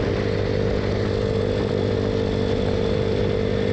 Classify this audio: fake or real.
real